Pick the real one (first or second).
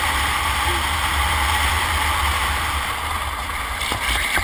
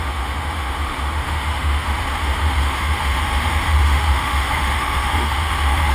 first